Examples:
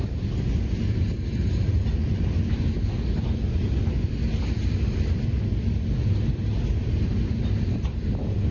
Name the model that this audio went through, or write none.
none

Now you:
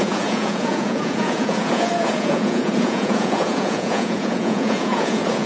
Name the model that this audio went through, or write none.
vocoder, Vocos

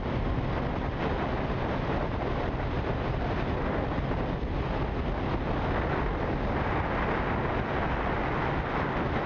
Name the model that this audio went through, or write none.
none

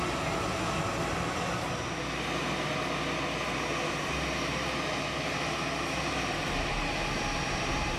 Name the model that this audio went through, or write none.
none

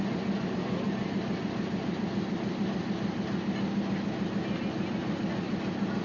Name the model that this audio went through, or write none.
none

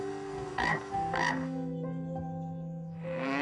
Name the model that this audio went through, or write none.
codec, SNAC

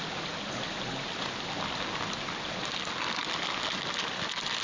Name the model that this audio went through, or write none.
none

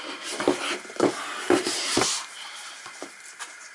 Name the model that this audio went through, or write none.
vocoder, BigVGAN v2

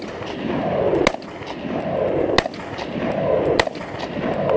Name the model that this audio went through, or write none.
none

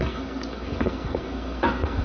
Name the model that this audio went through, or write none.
codec, SNAC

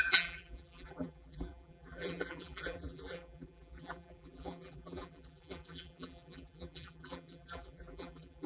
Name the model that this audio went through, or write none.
vocoder, BigVGAN v2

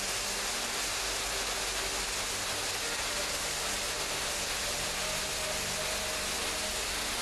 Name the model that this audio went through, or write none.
none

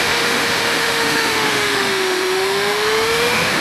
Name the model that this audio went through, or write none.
autoencoder, DAC-VAE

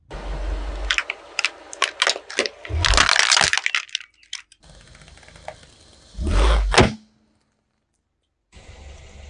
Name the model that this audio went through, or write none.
none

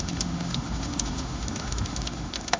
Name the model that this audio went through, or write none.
autoencoder, DAC-VAE